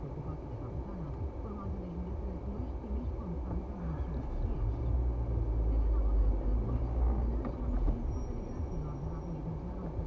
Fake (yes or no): no